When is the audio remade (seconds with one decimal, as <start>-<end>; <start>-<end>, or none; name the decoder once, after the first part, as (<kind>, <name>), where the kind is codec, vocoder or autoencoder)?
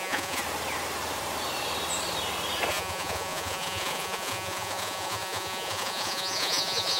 0.0-0.4 (vocoder, Vocos); 2.7-7.0